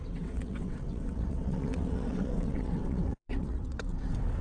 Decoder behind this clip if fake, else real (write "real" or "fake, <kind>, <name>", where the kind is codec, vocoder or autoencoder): fake, vocoder, WaveNeXt